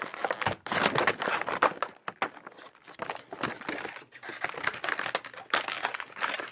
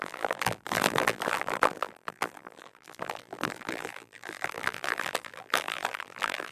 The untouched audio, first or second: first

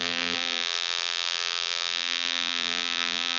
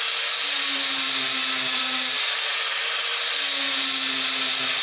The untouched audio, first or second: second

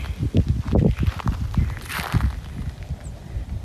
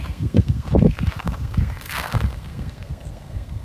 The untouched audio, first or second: first